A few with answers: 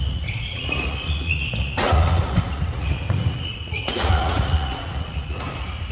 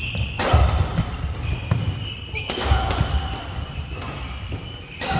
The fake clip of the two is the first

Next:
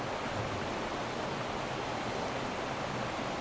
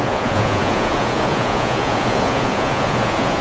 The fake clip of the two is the second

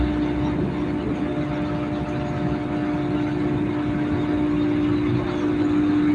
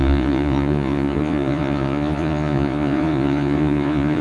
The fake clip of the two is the second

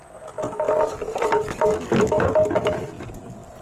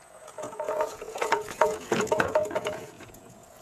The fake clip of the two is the second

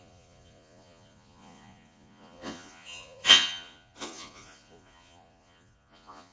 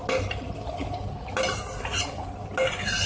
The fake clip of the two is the first